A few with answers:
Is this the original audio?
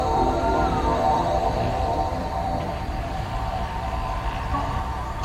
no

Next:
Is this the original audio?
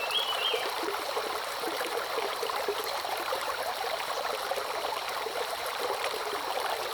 no